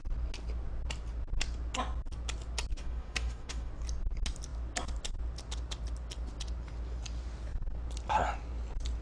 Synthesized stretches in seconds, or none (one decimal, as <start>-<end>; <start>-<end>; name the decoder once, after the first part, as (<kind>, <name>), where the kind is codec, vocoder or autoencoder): 2.7-3.7 (autoencoder, DAC-VAE)